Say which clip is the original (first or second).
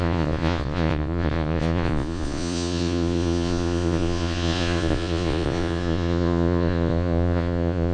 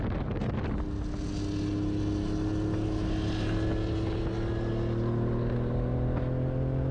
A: second